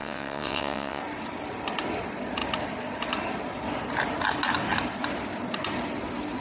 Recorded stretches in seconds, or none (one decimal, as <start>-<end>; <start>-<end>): 1.0-6.4